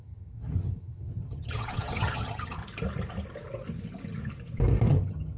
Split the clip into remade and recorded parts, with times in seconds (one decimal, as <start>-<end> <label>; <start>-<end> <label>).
0.0-2.6 remade; 2.6-4.9 recorded; 4.9-5.4 remade